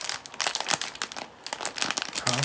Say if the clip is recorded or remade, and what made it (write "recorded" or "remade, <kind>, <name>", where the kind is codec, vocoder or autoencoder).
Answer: recorded